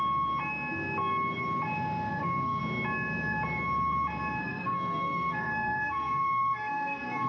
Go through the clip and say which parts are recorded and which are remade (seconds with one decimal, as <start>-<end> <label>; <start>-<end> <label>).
0.0-2.1 recorded; 2.1-2.6 remade; 2.6-4.4 recorded; 4.4-7.3 remade